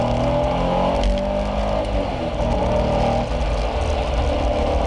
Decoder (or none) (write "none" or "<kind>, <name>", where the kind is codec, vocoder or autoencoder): none